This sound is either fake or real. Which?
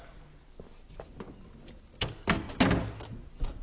real